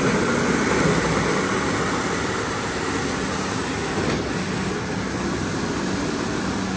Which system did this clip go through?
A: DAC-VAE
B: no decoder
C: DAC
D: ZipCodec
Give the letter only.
B